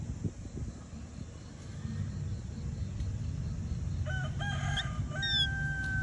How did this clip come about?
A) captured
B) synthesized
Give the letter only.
A